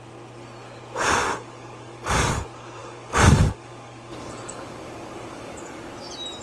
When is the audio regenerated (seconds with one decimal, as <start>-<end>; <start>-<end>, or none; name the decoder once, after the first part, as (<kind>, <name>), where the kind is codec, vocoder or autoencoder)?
1.2-2.3 (codec, DAC); 2.8-5.9

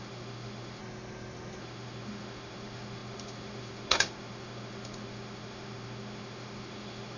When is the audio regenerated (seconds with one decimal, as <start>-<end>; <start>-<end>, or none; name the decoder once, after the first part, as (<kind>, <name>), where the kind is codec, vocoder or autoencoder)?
0.0-0.8 (autoencoder, DAC-VAE); 1.6-7.2

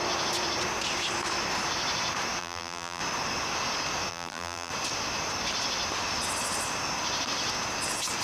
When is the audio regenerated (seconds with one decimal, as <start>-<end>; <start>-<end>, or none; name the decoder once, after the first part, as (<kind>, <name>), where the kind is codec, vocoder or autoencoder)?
2.4-3.0 (vocoder, BigVGAN v2); 4.1-4.7